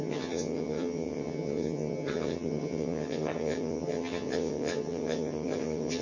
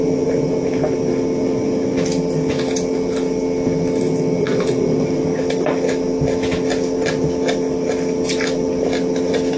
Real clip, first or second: second